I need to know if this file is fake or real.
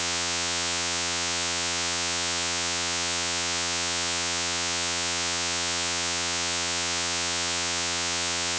fake